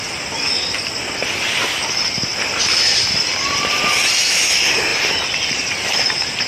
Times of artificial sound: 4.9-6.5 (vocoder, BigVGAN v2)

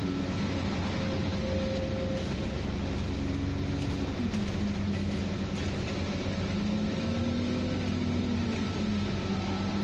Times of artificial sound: none